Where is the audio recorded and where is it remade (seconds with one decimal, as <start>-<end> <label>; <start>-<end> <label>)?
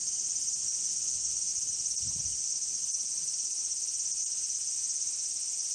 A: 0.0-0.6 recorded; 0.6-1.5 remade; 1.5-2.3 recorded; 2.3-2.8 remade; 2.8-5.7 recorded